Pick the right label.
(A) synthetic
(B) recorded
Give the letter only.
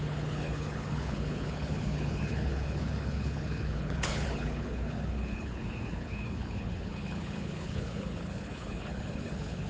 A